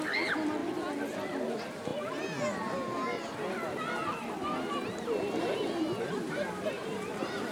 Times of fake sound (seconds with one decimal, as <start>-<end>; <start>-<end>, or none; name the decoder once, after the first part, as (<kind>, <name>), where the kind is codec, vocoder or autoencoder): 0.0-0.6 (vocoder, BigVGAN v2); 1.5-1.9; 5.4-7.5